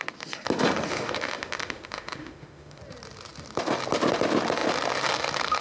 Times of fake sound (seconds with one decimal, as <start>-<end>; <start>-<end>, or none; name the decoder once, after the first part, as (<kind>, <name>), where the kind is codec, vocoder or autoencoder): 0.9-2.8 (autoencoder, DAC-VAE)

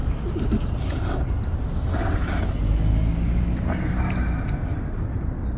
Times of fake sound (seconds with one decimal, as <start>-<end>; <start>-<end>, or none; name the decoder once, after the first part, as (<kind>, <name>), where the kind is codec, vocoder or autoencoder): none

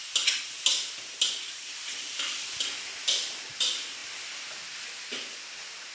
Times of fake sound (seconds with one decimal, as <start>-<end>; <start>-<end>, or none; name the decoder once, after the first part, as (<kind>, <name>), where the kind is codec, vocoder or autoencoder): none

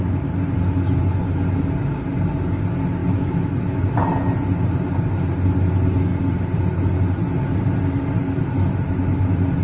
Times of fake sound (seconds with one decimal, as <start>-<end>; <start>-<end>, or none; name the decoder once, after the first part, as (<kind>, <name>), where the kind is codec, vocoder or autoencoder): 0.5-1.0 (autoencoder, DAC-VAE); 3.0-3.9

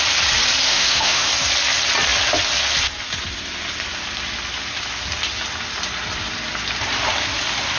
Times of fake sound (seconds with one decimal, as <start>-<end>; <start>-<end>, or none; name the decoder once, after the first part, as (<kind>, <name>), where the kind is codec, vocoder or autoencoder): 0.7-1.3 (autoencoder, DAC-VAE)